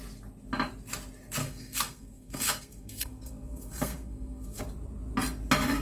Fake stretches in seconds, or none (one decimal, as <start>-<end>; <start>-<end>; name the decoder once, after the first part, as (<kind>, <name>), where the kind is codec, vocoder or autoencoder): 1.4-4.6 (codec, SNAC)